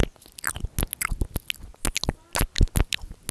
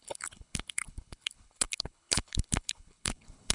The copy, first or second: second